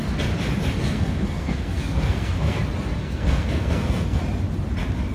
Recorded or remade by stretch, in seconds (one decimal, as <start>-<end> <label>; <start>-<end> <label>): 0.0-0.8 recorded; 0.8-2.6 remade; 2.6-3.0 recorded; 3.0-4.2 remade; 4.2-5.1 recorded